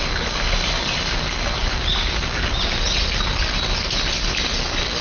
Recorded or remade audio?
recorded